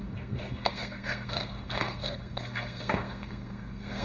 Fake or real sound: fake